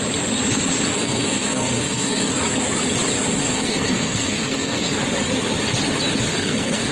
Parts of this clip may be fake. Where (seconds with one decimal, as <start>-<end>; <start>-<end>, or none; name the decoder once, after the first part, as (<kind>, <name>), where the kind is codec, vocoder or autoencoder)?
0.9-2.3 (codec, SNAC); 3.4-4.9; 6.3-6.9